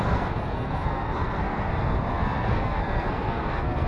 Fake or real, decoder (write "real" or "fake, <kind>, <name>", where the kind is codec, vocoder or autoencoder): fake, codec, SNAC